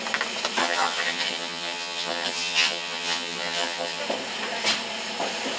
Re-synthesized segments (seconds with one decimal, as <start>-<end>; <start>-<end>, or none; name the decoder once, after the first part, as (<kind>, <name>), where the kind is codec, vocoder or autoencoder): 0.6-4.0 (vocoder, HiFi-GAN)